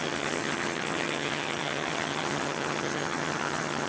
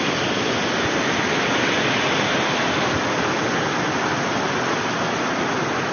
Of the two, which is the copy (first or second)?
first